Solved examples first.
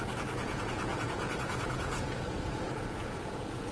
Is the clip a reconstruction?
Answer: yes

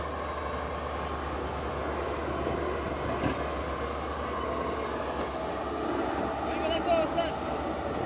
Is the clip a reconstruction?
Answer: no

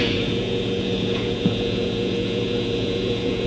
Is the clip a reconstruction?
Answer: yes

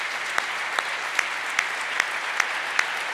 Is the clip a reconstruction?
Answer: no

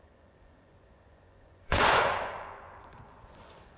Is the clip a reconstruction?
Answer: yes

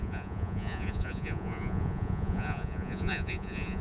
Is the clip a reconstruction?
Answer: yes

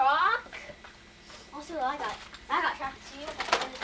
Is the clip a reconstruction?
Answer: no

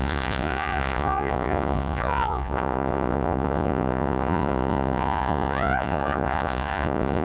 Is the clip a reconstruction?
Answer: yes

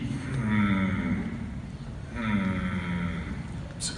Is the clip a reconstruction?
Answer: no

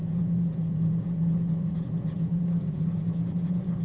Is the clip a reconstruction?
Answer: yes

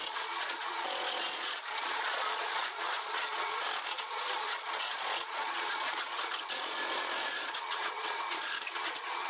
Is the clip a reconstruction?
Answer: yes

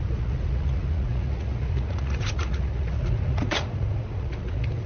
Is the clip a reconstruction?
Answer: yes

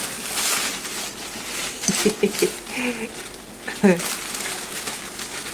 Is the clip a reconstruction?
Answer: no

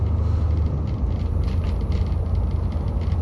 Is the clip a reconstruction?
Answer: no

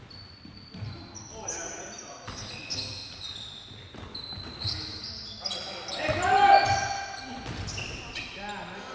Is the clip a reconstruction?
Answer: no